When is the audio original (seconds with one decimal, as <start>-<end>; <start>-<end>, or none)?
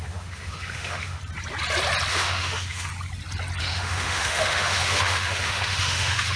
1.2-2.1; 2.9-3.6